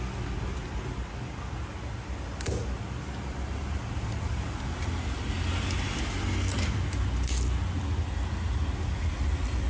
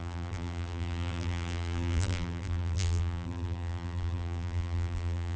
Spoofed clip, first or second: second